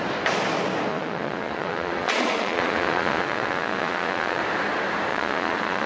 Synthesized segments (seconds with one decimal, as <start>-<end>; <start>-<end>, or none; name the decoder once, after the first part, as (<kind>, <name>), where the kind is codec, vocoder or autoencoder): 0.9-4.4 (vocoder, Vocos); 5.1-5.9